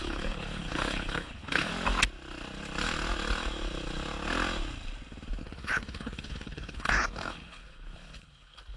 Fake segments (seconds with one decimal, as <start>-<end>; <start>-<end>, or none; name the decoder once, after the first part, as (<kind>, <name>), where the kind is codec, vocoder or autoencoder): 0.0-1.7 (codec, HILCodec); 5.4-8.8